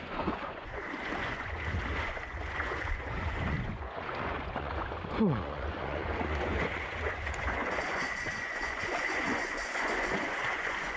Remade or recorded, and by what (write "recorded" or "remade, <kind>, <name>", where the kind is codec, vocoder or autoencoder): remade, vocoder, Vocos